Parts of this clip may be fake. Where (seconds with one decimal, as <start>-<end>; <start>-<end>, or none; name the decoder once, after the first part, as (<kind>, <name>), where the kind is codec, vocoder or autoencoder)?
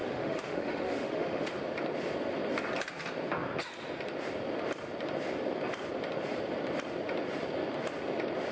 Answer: 0.0-1.5 (autoencoder, DAC-VAE)